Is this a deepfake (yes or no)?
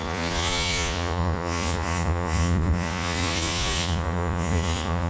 yes